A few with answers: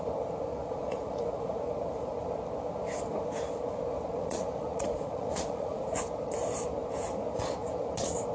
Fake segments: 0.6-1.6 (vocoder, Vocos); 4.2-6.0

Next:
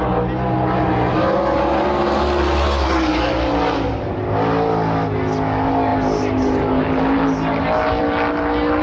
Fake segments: none

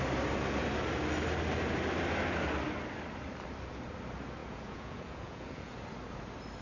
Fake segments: 4.4-5.7 (vocoder, Vocos)

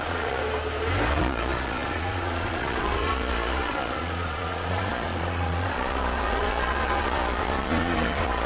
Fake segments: 0.0-0.4 (vocoder, Vocos); 1.1-8.5